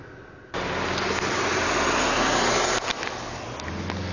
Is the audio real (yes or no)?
yes